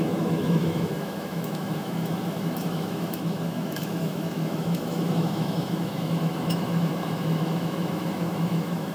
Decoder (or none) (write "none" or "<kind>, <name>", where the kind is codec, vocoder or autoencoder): autoencoder, DAC-VAE